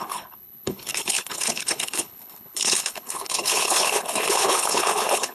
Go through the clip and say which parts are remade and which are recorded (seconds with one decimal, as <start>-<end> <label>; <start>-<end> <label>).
0.0-5.3 remade

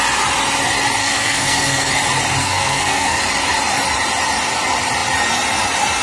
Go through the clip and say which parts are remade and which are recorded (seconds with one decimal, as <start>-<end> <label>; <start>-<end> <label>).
0.0-1.0 recorded; 1.0-1.9 remade; 1.9-2.4 recorded; 2.4-3.2 remade; 3.2-6.0 recorded

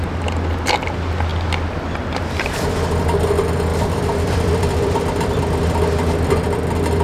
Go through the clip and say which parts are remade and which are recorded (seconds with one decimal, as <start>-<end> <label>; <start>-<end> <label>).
0.0-3.7 recorded; 3.7-5.4 remade; 5.4-7.0 recorded

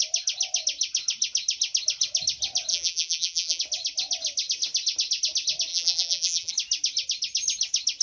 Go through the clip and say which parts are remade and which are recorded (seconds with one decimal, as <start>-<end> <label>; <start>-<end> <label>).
0.0-2.7 recorded; 2.7-3.6 remade; 3.6-5.7 recorded; 5.7-6.5 remade; 6.5-8.0 recorded

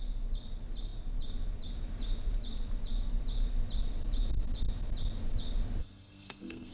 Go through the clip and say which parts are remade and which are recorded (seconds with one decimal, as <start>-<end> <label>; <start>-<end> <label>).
0.0-5.8 recorded; 5.8-6.7 remade

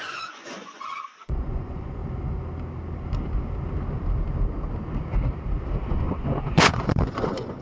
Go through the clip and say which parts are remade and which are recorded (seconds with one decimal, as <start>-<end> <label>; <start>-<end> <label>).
0.0-2.0 remade; 2.0-5.9 recorded; 5.9-7.6 remade

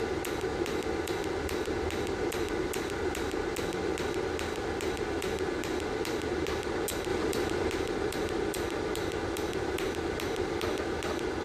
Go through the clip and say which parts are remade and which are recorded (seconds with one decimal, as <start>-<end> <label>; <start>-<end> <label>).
0.0-7.1 recorded; 7.1-7.7 remade; 7.7-11.4 recorded